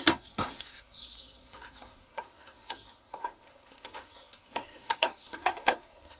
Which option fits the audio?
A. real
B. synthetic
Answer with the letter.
B